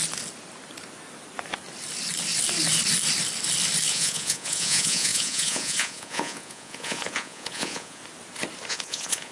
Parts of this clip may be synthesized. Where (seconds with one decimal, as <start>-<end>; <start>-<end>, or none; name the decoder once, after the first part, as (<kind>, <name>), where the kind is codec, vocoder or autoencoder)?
3.9-8.0 (vocoder, Vocos); 8.7-9.3